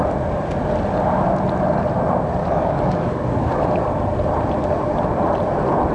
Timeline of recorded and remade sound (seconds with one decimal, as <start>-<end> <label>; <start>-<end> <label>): 0.0-2.4 recorded; 2.4-3.6 remade; 3.6-5.9 recorded